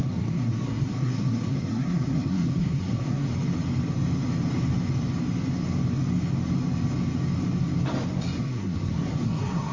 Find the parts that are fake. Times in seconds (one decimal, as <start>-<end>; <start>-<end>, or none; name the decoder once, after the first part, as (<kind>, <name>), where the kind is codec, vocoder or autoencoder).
0.0-3.3 (codec, SNAC); 8.4-9.7